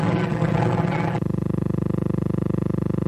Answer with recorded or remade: recorded